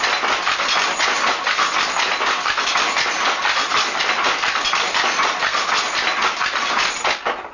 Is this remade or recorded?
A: recorded